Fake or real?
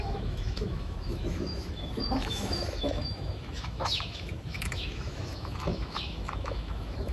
fake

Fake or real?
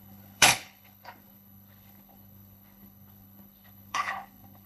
fake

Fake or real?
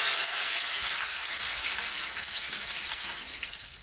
fake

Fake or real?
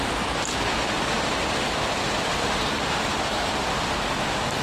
real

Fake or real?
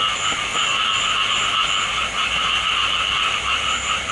real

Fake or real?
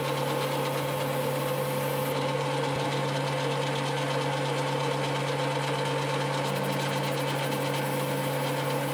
real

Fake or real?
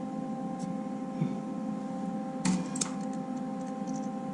real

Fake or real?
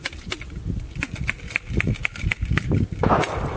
real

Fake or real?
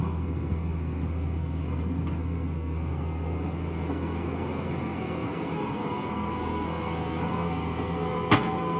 fake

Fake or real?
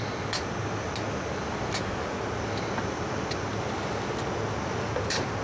real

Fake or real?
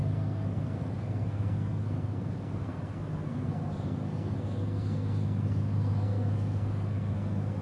fake